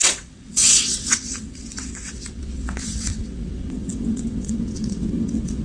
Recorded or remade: remade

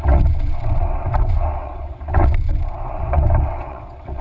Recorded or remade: remade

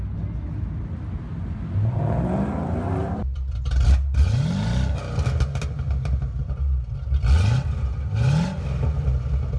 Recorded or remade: recorded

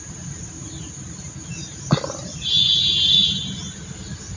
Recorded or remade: recorded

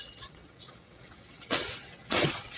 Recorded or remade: remade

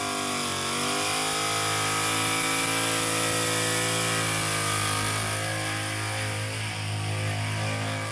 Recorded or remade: recorded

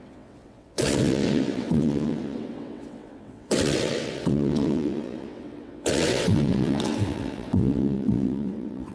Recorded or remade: remade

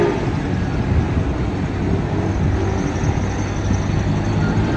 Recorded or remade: recorded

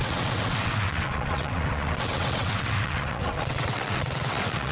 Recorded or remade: remade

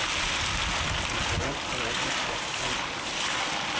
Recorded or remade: recorded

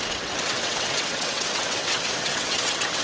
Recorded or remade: remade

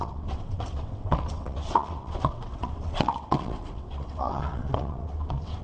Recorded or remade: remade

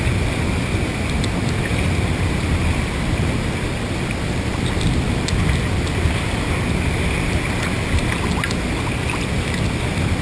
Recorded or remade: recorded